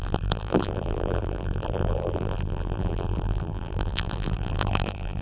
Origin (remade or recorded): remade